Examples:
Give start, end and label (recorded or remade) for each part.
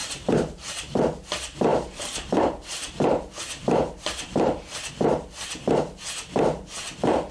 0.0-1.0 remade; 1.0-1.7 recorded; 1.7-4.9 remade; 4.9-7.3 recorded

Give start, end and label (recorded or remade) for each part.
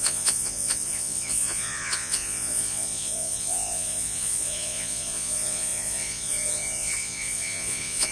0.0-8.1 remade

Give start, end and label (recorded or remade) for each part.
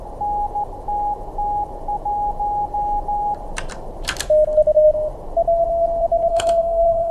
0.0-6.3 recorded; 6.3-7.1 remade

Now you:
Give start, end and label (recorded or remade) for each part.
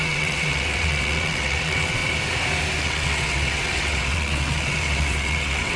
0.0-2.0 remade; 2.0-2.8 recorded; 2.8-5.8 remade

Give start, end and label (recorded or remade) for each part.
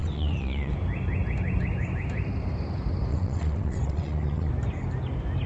0.0-0.7 remade; 0.7-3.1 recorded; 3.1-4.5 remade; 4.5-5.5 recorded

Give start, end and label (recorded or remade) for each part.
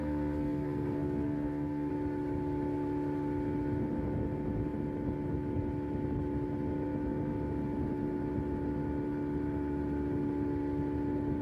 0.0-1.9 remade; 1.9-11.4 recorded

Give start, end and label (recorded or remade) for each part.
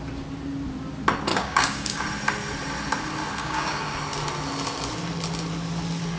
0.0-1.3 recorded; 1.3-2.0 remade; 2.0-3.4 recorded; 3.4-4.0 remade; 4.0-6.2 recorded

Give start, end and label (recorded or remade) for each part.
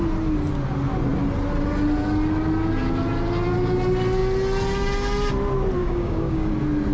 0.0-5.8 recorded; 5.8-6.5 remade; 6.5-6.9 recorded